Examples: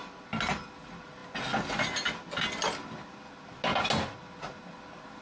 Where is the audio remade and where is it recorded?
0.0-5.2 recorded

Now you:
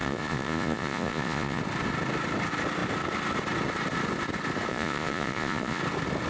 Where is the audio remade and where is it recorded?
0.0-1.6 remade; 1.6-4.7 recorded; 4.7-5.8 remade; 5.8-6.3 recorded